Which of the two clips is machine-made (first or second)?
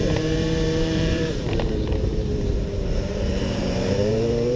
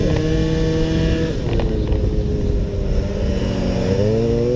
first